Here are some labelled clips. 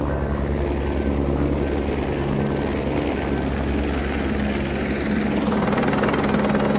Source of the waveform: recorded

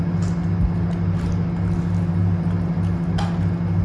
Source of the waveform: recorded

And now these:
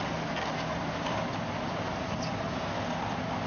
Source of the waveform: recorded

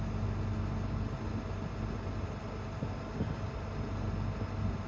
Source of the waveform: recorded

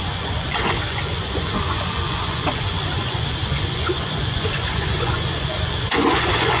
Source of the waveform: remade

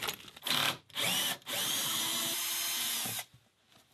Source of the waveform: recorded